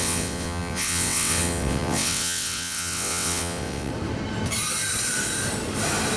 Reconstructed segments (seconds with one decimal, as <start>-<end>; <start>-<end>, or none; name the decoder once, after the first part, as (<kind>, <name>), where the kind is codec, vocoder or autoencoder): 0.0-3.9 (vocoder, WaveNeXt)

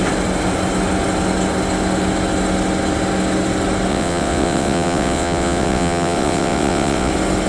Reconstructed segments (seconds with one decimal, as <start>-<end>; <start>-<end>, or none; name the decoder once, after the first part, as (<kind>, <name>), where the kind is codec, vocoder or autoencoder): 3.9-7.1 (vocoder, WaveNeXt)